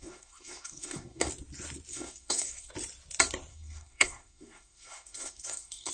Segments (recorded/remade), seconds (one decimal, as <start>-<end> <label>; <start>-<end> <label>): 0.0-1.3 remade; 1.3-1.9 recorded; 1.9-2.7 remade; 2.7-3.5 recorded; 3.5-5.9 remade